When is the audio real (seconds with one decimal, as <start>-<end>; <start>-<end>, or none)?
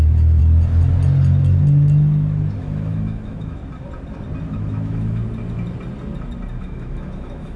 0.4-2.6; 3.6-4.5; 5.2-6.6